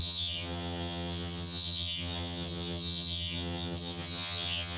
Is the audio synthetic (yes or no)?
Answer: yes